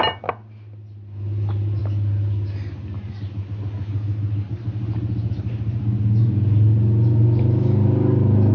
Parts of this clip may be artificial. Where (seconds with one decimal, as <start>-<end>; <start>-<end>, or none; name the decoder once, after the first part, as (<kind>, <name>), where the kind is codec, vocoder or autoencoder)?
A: none